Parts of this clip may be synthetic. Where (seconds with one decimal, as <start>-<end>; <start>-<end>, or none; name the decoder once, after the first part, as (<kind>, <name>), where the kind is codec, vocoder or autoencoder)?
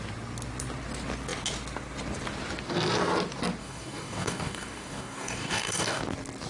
3.6-6.0 (codec, DAC)